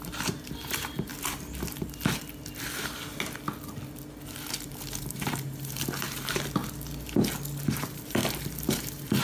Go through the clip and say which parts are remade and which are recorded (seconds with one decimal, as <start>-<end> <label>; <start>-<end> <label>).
0.0-1.1 remade; 1.1-5.0 recorded; 5.0-6.6 remade; 6.6-7.7 recorded; 7.7-9.2 remade